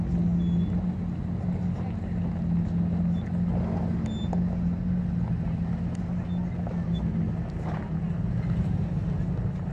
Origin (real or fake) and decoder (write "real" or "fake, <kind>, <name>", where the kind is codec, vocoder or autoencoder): real